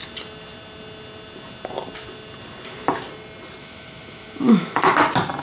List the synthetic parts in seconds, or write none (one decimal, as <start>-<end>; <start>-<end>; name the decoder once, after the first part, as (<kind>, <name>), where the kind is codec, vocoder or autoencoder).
3.6-4.9 (autoencoder, DAC-VAE)

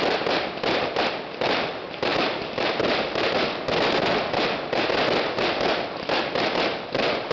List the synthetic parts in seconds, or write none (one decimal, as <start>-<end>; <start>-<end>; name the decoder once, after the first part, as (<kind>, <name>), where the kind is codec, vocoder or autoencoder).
none

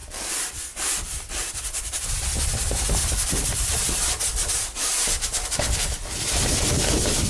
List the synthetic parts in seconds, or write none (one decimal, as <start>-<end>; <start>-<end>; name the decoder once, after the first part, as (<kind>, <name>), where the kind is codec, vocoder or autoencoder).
0.0-2.1 (vocoder, BigVGAN v2); 3.0-7.3

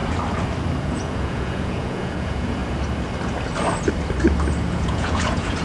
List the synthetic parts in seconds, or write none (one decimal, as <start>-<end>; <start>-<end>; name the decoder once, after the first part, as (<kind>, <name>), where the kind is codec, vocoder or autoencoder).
0.8-2.6 (vocoder, Vocos); 4.7-5.6

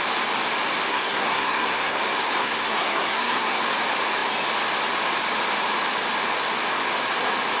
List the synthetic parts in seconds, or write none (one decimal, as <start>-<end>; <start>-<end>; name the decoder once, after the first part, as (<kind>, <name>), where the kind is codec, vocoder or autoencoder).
0.9-2.0 (codec, SNAC); 2.4-3.6

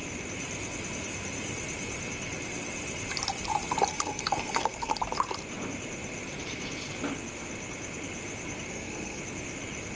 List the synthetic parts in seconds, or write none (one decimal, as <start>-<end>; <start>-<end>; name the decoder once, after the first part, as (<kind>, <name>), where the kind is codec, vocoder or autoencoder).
3.9-4.9 (codec, SNAC); 8.7-9.2